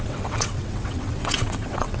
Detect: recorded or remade remade